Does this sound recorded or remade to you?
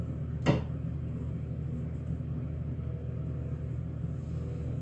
recorded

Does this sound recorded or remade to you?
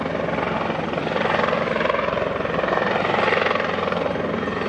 recorded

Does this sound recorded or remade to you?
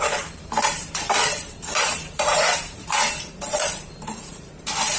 remade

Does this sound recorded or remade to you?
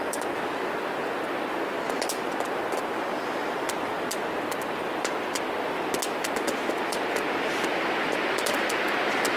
recorded